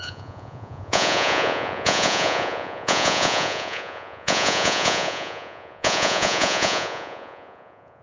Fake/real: fake